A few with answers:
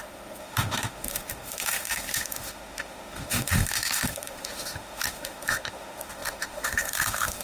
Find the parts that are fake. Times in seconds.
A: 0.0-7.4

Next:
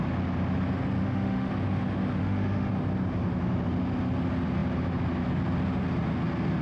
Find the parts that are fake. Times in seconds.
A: 1.0-1.5; 2.2-2.7

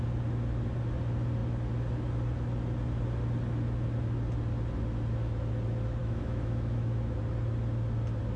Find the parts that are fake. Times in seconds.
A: 6.0-7.2